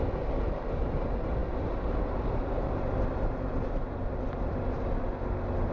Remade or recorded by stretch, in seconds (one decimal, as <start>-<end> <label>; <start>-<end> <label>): 0.0-5.7 recorded